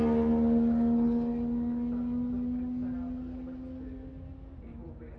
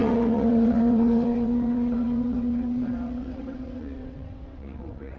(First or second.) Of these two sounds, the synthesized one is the second